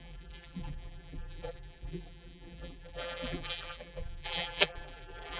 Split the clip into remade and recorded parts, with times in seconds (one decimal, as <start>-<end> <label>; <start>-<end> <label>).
0.0-5.4 remade